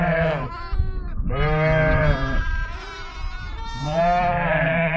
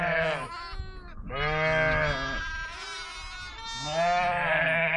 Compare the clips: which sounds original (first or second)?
second